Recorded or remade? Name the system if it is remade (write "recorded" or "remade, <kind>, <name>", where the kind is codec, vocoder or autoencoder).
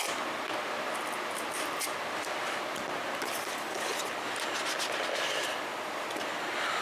recorded